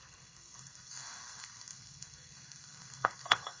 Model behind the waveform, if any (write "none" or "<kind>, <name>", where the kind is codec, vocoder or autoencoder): codec, SNAC